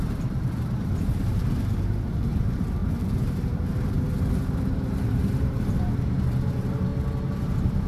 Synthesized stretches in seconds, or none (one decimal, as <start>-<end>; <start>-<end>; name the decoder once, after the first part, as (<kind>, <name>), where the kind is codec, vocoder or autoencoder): 0.0-6.9 (vocoder, BigVGAN v2); 7.4-7.9